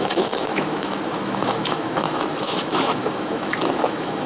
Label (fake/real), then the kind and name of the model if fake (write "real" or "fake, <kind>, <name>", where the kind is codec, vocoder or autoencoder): fake, autoencoder, DAC-VAE